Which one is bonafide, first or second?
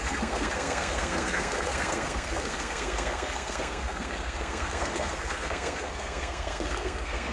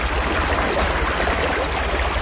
second